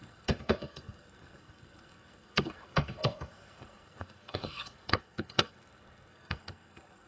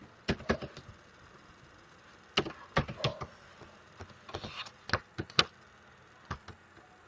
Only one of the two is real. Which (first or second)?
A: second